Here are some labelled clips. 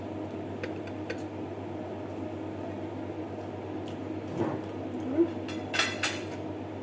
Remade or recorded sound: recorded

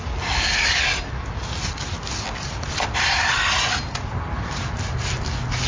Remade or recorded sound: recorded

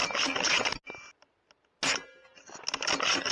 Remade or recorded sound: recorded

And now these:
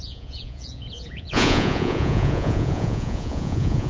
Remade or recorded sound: remade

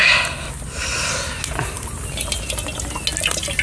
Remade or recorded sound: recorded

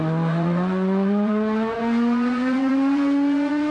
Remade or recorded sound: remade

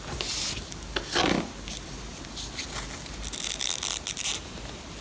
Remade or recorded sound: recorded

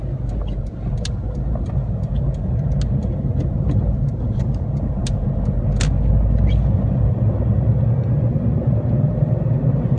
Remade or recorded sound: recorded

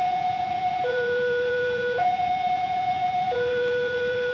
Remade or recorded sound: remade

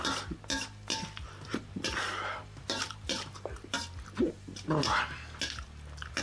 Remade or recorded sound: recorded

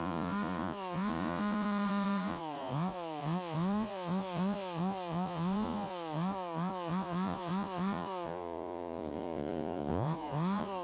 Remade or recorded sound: remade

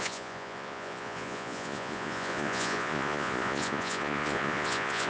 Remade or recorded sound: remade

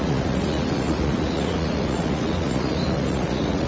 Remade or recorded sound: remade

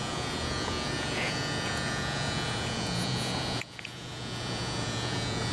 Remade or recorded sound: remade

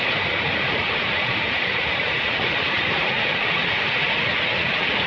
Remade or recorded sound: remade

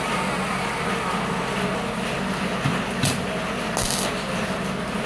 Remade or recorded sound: recorded